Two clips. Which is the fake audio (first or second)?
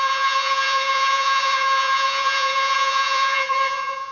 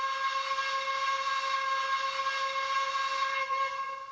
first